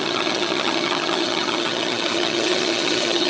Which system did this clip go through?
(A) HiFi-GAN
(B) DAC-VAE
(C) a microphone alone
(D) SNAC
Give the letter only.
A